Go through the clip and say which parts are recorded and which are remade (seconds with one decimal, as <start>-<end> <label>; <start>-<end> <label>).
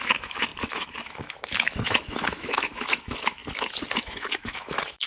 0.0-3.4 remade; 3.4-4.0 recorded; 4.0-5.1 remade